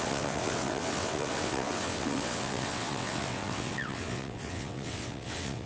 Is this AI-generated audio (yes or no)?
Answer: yes